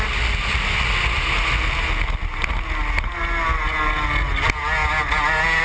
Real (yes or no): yes